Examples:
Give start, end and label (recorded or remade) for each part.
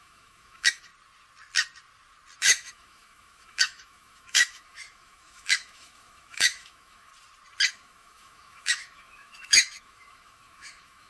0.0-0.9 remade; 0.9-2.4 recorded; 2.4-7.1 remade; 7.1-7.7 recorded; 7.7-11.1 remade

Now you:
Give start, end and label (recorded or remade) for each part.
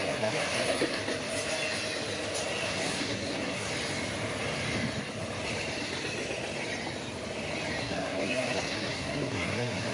0.0-1.0 remade; 1.0-2.6 recorded; 2.6-3.7 remade; 3.7-7.8 recorded; 7.8-9.9 remade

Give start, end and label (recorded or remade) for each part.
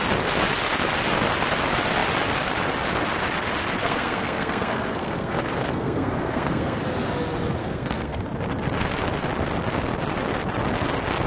0.0-3.8 recorded; 3.8-6.8 remade; 6.8-7.6 recorded; 7.6-8.2 remade; 8.2-11.3 recorded